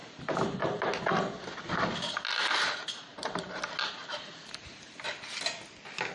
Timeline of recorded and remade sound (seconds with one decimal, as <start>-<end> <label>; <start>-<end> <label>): 0.0-0.9 remade; 0.9-3.1 recorded; 3.1-3.6 remade; 3.6-4.0 recorded; 4.0-5.1 remade; 5.1-6.1 recorded